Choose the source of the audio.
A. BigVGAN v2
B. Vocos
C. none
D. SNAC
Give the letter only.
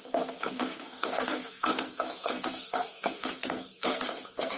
D